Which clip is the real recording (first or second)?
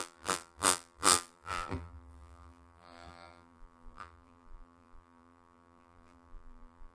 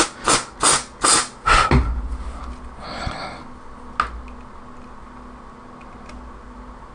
second